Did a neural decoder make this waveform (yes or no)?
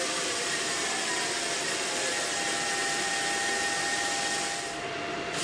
yes